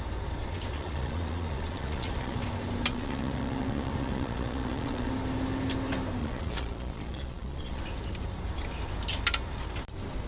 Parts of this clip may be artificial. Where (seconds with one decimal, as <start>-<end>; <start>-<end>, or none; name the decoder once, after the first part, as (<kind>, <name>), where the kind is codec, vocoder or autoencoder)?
0.7-2.4 (vocoder, Vocos); 2.9-5.1; 6.2-7.8